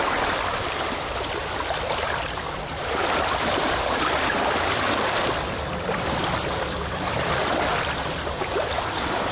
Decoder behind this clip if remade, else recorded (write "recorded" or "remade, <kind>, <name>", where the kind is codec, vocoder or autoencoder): remade, vocoder, BigVGAN v2